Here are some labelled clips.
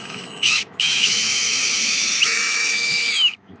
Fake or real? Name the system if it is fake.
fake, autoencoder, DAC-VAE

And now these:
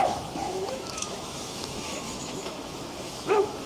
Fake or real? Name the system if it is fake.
fake, autoencoder, DAC-VAE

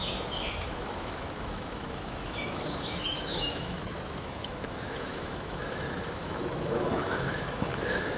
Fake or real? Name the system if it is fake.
fake, autoencoder, DAC-VAE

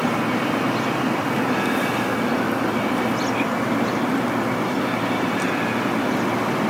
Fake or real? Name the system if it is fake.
real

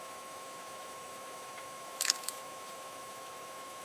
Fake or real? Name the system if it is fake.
fake, autoencoder, DAC-VAE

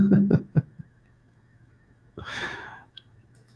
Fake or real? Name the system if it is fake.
fake, autoencoder, DAC-VAE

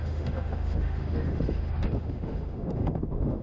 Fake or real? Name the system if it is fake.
fake, autoencoder, DAC-VAE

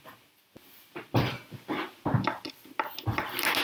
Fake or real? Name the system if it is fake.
real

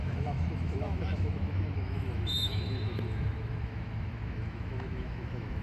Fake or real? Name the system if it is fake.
fake, autoencoder, DAC-VAE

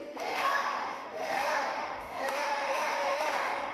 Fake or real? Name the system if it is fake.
fake, autoencoder, DAC-VAE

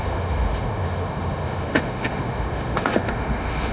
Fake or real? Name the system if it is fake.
fake, autoencoder, DAC-VAE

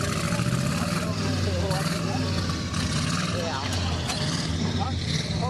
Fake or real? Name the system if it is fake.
real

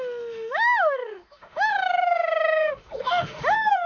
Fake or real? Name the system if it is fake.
fake, autoencoder, DAC-VAE